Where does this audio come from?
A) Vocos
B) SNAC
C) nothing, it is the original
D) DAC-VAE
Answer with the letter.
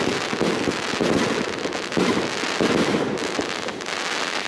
C